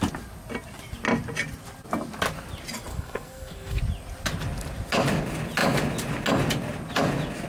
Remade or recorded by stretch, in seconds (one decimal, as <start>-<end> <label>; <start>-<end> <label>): 0.0-2.9 recorded; 2.9-3.8 remade; 3.8-7.5 recorded